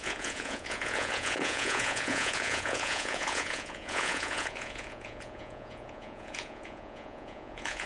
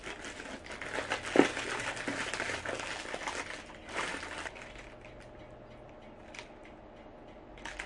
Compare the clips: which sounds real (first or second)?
second